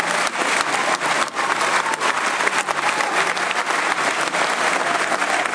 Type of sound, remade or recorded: recorded